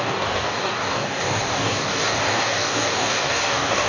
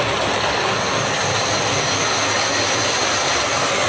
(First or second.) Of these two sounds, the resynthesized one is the first